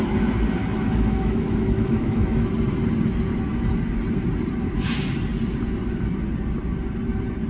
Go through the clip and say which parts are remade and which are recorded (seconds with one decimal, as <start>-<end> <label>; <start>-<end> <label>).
0.0-0.6 recorded; 0.6-2.5 remade; 2.5-7.5 recorded